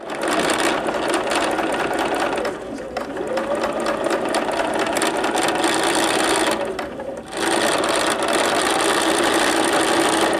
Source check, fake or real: real